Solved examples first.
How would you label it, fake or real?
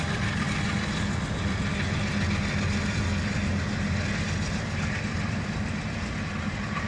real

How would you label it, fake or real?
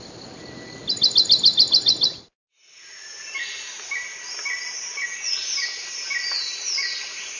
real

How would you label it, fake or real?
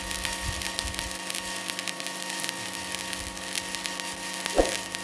real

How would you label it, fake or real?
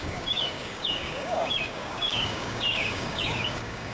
fake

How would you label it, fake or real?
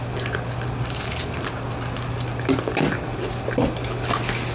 real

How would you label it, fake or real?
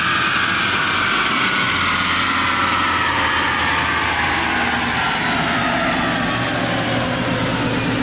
real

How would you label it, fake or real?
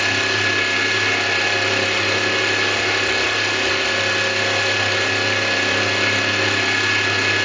real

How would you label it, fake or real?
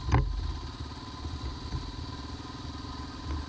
real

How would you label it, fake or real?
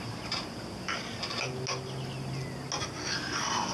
real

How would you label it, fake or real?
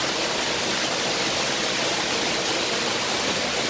real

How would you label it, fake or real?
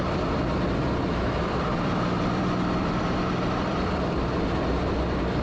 fake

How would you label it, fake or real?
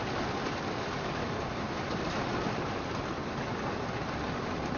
real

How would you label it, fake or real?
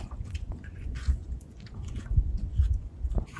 fake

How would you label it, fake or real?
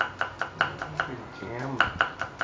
real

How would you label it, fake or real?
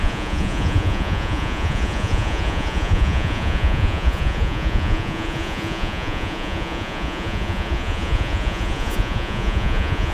fake